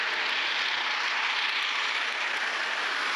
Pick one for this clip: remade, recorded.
recorded